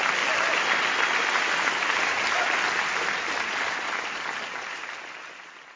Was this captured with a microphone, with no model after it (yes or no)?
yes